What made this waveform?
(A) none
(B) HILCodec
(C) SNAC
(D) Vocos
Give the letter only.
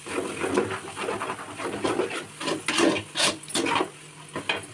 A